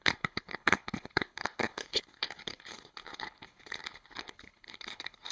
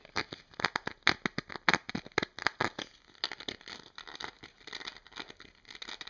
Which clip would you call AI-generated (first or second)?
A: first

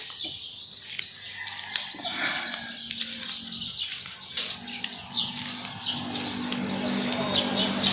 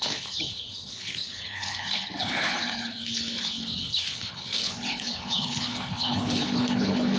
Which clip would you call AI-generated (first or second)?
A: second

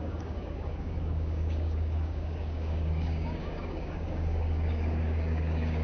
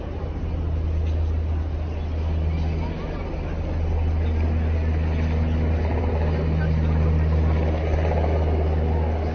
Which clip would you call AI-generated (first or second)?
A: first